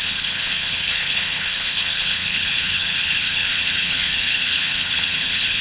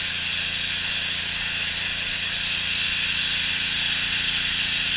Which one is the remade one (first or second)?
first